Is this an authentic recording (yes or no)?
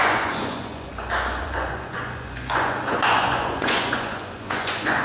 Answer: no